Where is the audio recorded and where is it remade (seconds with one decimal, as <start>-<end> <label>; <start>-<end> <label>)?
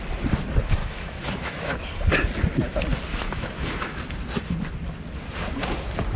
0.0-0.8 recorded; 0.8-1.8 remade; 1.8-3.1 recorded; 3.1-4.0 remade; 4.0-6.2 recorded